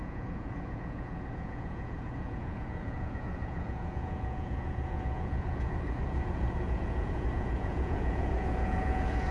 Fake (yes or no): yes